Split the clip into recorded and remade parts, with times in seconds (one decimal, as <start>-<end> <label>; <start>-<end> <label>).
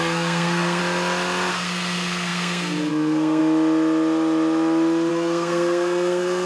0.0-0.8 remade; 0.8-1.5 recorded; 1.5-3.4 remade; 3.4-5.1 recorded; 5.1-6.5 remade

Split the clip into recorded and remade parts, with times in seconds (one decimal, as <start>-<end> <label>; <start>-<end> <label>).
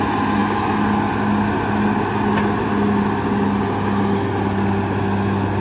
0.0-5.6 recorded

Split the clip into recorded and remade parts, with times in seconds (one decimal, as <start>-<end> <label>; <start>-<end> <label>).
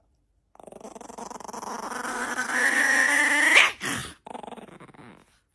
0.0-2.1 recorded; 2.1-3.2 remade; 3.2-5.5 recorded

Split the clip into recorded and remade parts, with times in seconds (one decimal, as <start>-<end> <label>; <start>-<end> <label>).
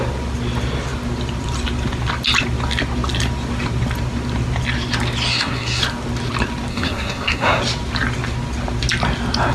0.0-5.3 recorded; 5.3-5.8 remade; 5.8-6.7 recorded; 6.7-7.6 remade; 7.6-9.5 recorded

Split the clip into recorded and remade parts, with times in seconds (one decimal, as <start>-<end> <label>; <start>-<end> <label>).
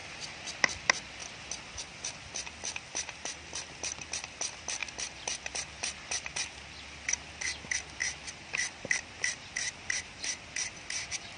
0.0-1.2 recorded; 1.2-1.8 remade; 1.8-4.8 recorded; 4.8-6.3 remade; 6.3-8.0 recorded; 8.0-10.4 remade; 10.4-11.4 recorded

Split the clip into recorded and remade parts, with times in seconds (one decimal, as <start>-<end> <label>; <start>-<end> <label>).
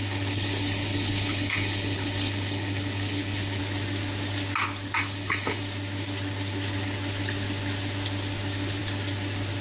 0.0-3.6 remade; 3.6-5.0 recorded; 5.0-5.6 remade; 5.6-9.6 recorded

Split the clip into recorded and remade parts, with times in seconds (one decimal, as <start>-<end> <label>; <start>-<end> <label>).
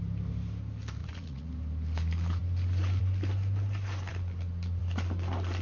0.0-1.0 recorded; 1.0-1.5 remade; 1.5-5.6 recorded